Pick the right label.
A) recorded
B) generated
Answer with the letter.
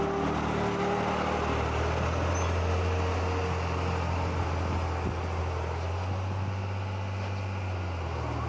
A